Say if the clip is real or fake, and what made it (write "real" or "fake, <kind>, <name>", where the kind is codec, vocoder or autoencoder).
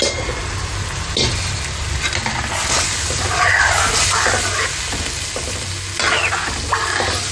real